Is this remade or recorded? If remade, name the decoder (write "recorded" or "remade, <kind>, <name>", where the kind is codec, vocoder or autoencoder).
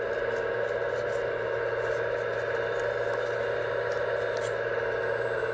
recorded